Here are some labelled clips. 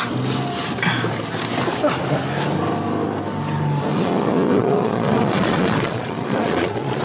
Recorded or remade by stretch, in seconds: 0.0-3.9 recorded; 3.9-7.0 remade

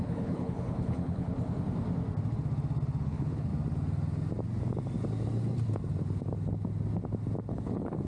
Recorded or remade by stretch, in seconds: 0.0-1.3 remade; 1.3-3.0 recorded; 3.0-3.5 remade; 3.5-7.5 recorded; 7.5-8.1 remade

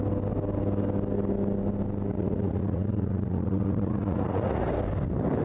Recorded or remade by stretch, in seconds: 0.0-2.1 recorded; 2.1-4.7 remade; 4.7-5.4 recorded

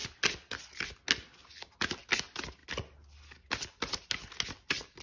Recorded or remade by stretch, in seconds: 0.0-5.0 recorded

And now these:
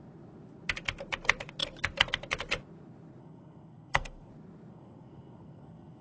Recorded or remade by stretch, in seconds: 0.0-3.2 recorded; 3.2-4.3 remade; 4.3-4.7 recorded; 4.7-6.0 remade

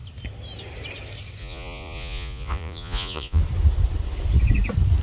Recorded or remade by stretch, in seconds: 0.0-1.4 recorded; 1.4-3.4 remade; 3.4-5.0 recorded

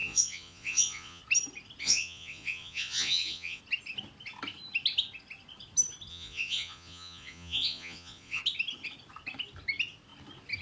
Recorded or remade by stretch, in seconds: 0.0-1.2 remade; 1.2-1.8 recorded; 1.8-3.6 remade; 3.6-6.1 recorded; 6.1-8.4 remade; 8.4-10.6 recorded